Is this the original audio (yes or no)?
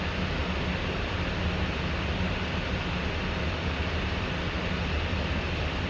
yes